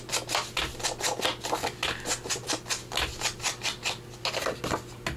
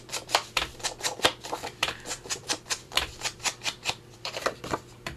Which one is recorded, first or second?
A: first